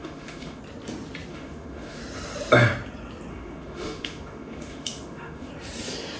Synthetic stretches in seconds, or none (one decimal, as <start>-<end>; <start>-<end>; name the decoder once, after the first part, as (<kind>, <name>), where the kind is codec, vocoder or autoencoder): 0.0-0.6 (autoencoder, DAC-VAE); 1.3-2.0; 3.3-5.5